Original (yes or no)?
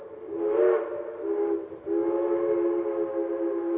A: yes